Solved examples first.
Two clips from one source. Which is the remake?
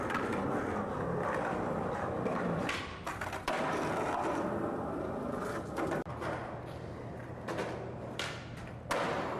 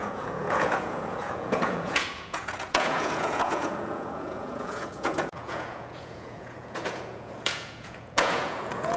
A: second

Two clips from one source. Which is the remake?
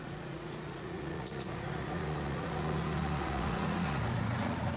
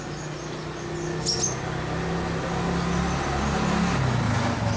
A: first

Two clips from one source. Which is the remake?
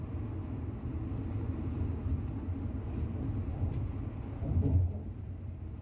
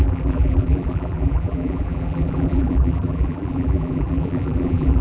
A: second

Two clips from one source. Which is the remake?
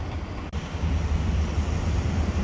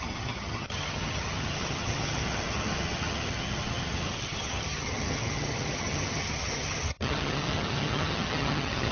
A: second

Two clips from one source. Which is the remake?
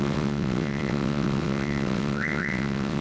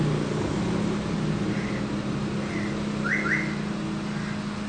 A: first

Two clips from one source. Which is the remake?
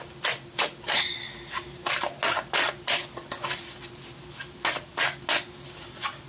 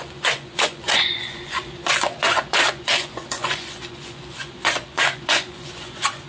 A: second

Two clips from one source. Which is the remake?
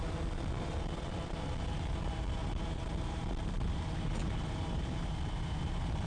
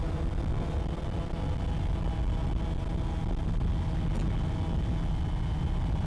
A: first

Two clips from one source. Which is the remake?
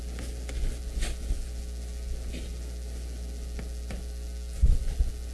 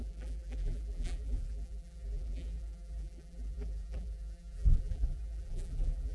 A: second